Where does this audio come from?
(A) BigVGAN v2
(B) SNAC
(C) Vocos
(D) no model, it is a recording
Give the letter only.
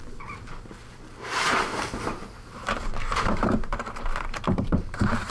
A